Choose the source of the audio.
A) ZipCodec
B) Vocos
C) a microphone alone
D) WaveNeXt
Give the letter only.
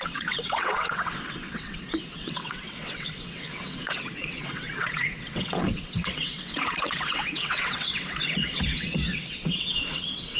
D